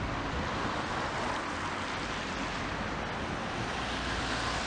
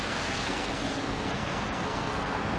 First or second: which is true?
first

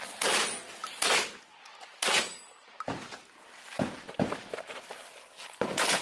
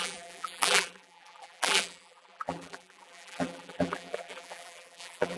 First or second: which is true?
first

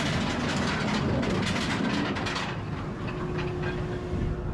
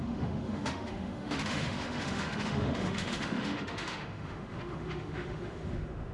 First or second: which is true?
first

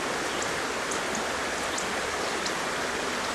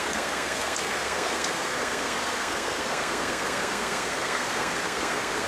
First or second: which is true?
first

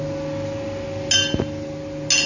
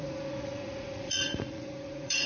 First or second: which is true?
first